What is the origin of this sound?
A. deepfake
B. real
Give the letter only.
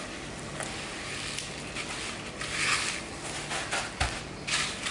B